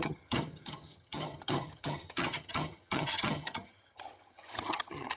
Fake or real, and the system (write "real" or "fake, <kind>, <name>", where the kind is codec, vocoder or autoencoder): fake, vocoder, HiFi-GAN